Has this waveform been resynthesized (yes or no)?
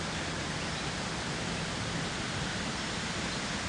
no